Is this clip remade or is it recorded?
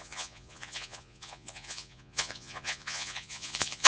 remade